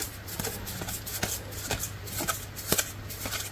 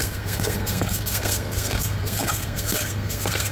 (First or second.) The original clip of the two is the first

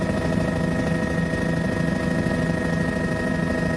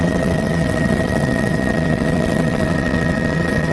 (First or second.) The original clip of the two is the first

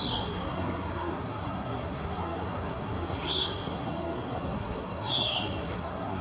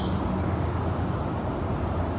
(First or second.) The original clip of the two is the second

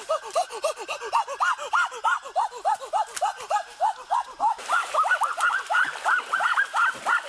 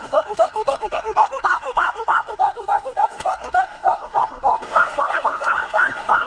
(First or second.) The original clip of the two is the first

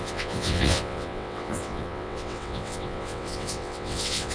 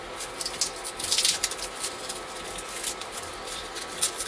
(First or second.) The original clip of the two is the second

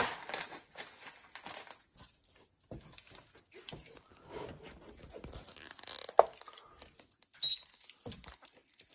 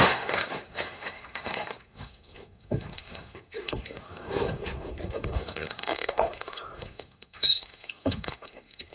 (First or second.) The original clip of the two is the first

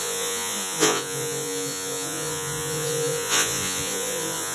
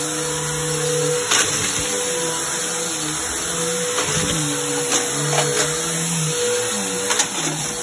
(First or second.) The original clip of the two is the second